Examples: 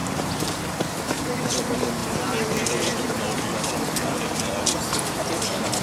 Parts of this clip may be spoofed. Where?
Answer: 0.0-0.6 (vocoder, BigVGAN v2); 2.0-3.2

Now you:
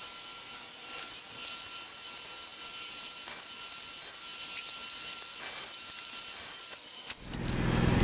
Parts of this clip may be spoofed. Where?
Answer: none

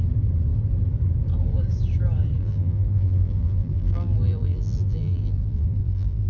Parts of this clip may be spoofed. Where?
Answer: 2.4-6.3 (vocoder, BigVGAN v2)